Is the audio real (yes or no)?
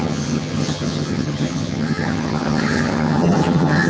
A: no